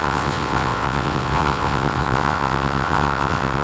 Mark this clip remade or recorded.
remade